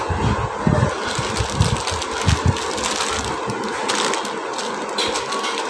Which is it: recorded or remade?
recorded